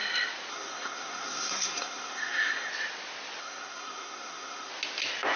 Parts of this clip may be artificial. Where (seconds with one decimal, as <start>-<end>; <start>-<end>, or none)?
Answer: 0.5-2.7; 3.4-4.7